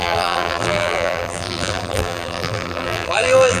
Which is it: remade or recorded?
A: remade